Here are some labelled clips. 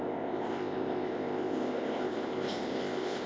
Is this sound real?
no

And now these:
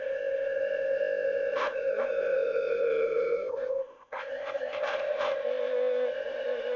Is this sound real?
no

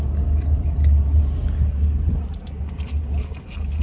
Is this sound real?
yes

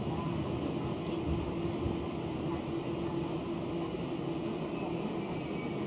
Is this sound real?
yes